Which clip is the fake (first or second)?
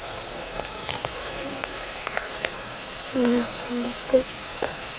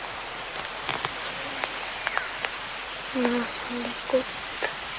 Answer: first